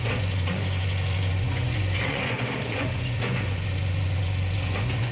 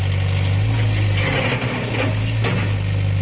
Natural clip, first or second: second